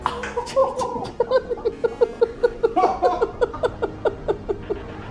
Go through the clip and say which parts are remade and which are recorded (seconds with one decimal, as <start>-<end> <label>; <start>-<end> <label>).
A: 0.0-0.6 recorded; 0.6-3.7 remade; 3.7-5.1 recorded